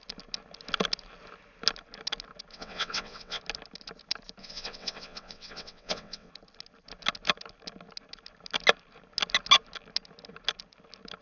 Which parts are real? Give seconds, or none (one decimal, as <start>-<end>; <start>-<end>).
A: 0.0-2.5; 3.4-4.4; 6.3-11.2